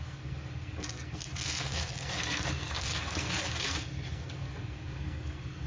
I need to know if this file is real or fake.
fake